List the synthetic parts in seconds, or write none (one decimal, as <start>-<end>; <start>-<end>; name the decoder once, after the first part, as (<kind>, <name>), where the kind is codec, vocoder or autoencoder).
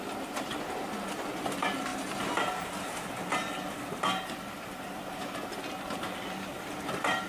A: none